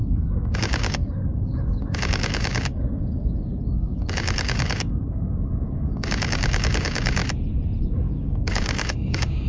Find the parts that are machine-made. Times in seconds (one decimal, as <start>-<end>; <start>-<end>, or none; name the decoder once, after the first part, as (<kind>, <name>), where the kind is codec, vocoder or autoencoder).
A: 0.0-7.2 (codec, DAC); 7.8-9.5